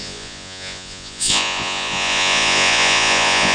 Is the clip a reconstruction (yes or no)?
yes